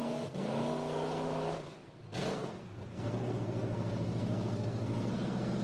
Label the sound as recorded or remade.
remade